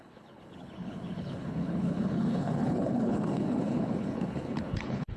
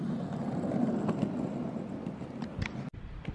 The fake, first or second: first